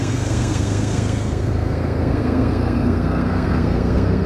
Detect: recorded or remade remade